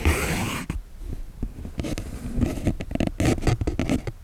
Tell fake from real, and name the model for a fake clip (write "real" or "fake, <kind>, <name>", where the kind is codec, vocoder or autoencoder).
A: real